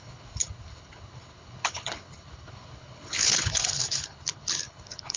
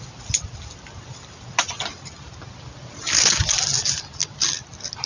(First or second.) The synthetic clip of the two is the first